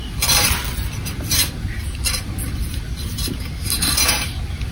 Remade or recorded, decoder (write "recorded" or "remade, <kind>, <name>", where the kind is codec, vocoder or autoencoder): recorded